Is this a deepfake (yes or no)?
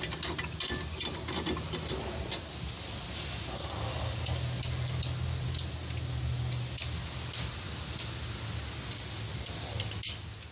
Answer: no